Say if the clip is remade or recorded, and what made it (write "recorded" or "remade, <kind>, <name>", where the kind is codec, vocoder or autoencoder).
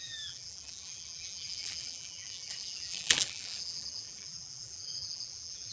remade, vocoder, BigVGAN v2